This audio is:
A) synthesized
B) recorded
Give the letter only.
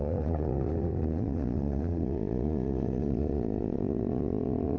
A